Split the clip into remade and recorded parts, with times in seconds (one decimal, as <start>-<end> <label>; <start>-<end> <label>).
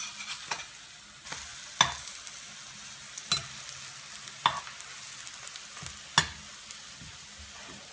0.0-7.9 recorded